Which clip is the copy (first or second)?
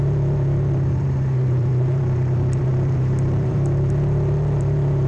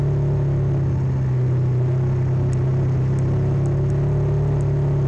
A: first